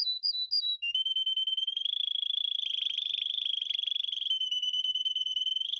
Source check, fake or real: real